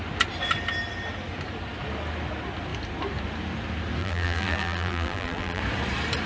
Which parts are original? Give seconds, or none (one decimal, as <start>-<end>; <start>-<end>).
0.0-4.0; 5.6-6.3